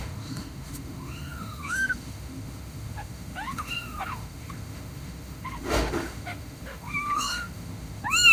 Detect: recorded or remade remade